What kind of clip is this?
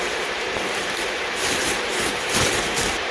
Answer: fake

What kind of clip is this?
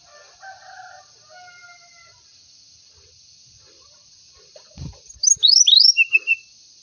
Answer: fake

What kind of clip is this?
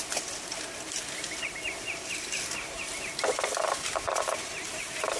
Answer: real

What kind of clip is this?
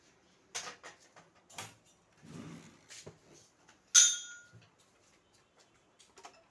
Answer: real